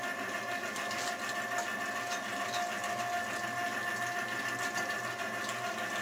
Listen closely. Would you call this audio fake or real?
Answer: real